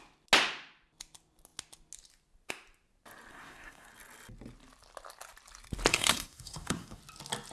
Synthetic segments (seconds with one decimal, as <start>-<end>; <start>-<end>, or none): 3.3-3.9; 5.9-7.0